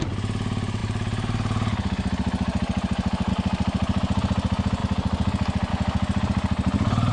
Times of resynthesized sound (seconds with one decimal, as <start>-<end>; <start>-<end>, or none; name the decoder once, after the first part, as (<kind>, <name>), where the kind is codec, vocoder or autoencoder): none